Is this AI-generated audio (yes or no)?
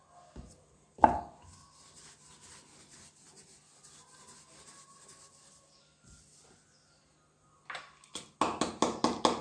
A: no